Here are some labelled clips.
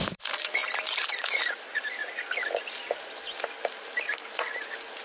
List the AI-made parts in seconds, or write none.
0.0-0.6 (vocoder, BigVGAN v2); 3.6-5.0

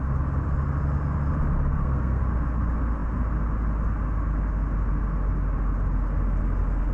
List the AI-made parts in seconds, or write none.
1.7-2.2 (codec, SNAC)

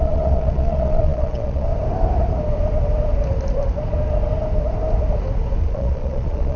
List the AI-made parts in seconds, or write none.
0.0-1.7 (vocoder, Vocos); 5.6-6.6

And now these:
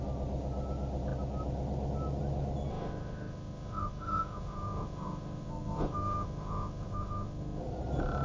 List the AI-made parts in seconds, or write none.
2.7-7.6 (autoencoder, DAC-VAE)

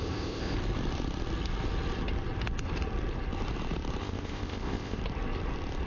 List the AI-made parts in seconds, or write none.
0.0-0.5 (codec, ZipCodec); 4.0-5.0

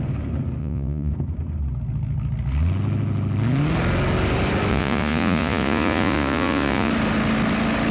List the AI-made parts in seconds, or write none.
0.6-1.1 (vocoder, Vocos); 4.7-6.9

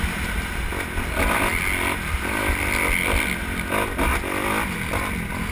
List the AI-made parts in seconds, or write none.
4.1-4.7 (vocoder, BigVGAN v2)

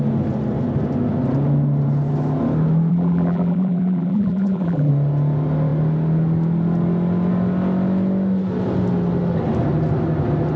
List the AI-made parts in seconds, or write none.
2.9-4.9 (vocoder, BigVGAN v2)